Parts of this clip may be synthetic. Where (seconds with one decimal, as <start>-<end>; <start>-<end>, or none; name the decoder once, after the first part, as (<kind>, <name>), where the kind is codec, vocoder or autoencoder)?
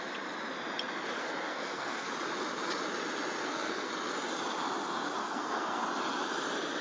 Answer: 1.2-2.1 (codec, SNAC); 3.4-3.9; 5.2-5.8